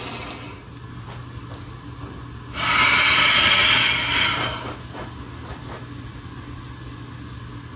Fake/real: real